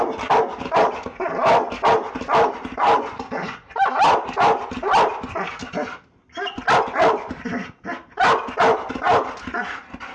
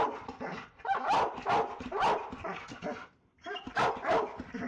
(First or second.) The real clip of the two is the first